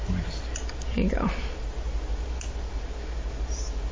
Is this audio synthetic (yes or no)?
no